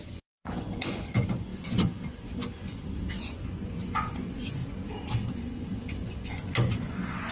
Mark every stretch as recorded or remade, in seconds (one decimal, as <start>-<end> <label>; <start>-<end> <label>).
0.0-4.6 remade; 4.6-5.3 recorded; 5.3-7.3 remade